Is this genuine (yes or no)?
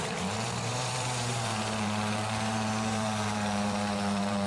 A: no